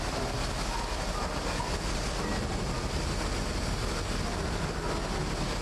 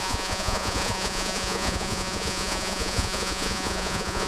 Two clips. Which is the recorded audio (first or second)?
first